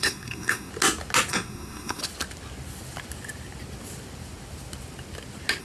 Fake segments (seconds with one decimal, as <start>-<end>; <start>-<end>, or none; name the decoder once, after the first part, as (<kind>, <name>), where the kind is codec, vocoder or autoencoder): 0.0-0.7 (codec, SNAC); 1.3-2.0